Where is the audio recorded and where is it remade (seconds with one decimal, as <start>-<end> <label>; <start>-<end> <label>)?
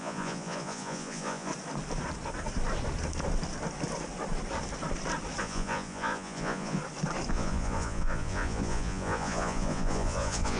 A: 0.0-1.5 remade; 1.5-5.4 recorded; 5.4-6.8 remade; 6.8-7.3 recorded; 7.3-10.6 remade